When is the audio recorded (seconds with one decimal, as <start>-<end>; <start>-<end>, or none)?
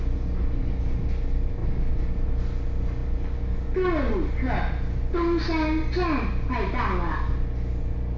0.0-8.2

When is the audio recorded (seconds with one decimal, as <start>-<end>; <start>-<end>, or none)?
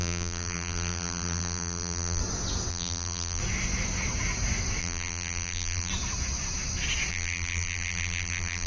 2.2-2.7; 3.4-4.8; 5.9-7.1